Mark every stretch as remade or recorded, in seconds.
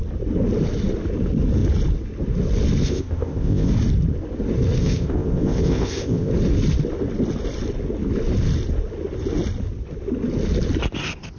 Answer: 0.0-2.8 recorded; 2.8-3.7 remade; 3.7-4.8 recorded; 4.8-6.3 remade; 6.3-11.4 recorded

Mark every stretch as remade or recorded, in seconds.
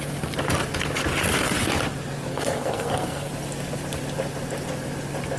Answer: 0.0-2.3 recorded; 2.3-3.3 remade; 3.3-5.4 recorded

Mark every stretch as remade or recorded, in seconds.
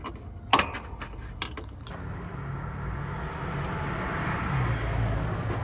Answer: 0.0-5.6 recorded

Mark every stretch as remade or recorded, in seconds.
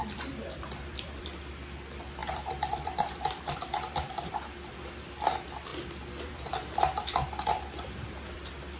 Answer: 0.0-1.4 remade; 1.4-2.2 recorded; 2.2-4.3 remade; 4.3-5.7 recorded; 5.7-8.8 remade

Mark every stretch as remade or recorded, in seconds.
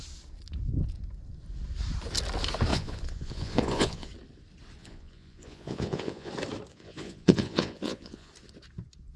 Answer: 0.0-2.7 recorded; 2.7-4.1 remade; 4.1-4.8 recorded; 4.8-6.3 remade; 6.3-6.7 recorded; 6.7-8.3 remade; 8.3-9.2 recorded